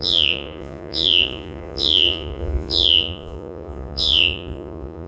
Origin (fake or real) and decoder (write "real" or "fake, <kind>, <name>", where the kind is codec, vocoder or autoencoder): fake, vocoder, Vocos